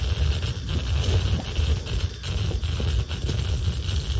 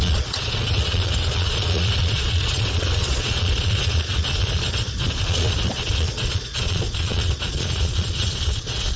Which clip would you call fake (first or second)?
second